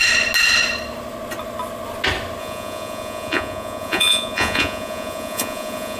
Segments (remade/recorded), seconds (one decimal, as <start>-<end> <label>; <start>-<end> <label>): 0.0-2.4 recorded; 2.4-6.0 remade

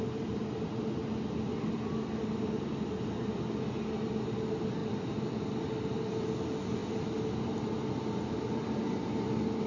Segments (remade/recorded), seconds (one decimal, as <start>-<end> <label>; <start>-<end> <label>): 0.0-9.7 recorded

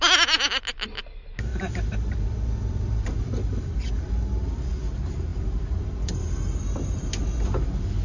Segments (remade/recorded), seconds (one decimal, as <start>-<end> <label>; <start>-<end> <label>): 0.0-1.5 recorded; 1.5-3.9 remade; 3.9-5.3 recorded; 5.3-6.1 remade; 6.1-8.0 recorded

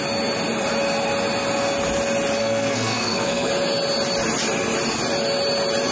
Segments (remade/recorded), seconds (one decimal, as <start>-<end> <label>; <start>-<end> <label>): 0.0-2.4 recorded; 2.4-3.5 remade; 3.5-5.9 recorded

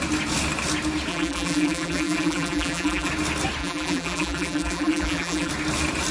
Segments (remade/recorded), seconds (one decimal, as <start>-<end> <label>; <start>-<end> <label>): 0.0-1.1 recorded; 1.1-3.1 remade; 3.1-3.6 recorded; 3.6-5.5 remade; 5.5-6.1 recorded

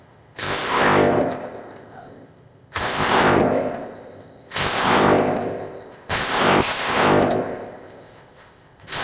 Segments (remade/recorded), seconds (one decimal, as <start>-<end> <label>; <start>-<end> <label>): 0.0-9.0 remade

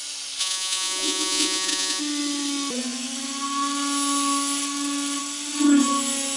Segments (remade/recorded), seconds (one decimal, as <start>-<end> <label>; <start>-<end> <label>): 0.0-0.4 recorded; 0.4-2.0 remade; 2.0-6.4 recorded